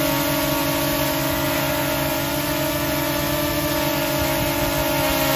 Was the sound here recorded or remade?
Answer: recorded